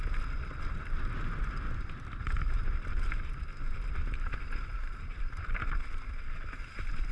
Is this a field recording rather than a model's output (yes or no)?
yes